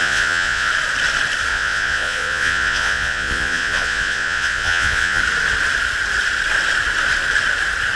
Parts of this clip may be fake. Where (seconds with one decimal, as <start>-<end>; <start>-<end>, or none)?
0.0-0.7; 1.5-5.2